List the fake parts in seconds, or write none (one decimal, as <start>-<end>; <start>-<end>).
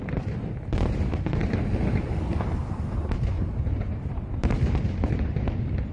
2.6-5.3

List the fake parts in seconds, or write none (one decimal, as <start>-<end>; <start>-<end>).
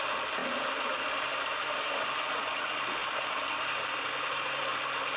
0.4-2.2; 3.0-4.7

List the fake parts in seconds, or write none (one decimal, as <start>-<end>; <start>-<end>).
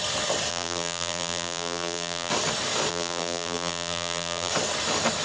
0.5-2.3; 2.9-4.5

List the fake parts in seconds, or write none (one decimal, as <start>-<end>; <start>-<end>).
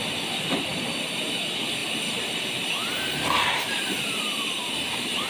1.8-5.3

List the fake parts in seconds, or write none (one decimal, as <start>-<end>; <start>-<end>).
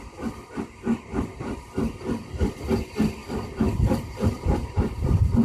3.2-4.9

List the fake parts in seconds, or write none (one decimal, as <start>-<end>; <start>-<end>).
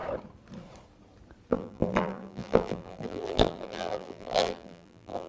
1.5-5.3